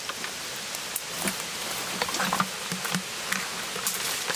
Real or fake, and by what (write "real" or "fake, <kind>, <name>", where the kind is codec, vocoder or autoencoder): real